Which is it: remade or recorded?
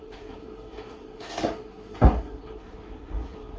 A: remade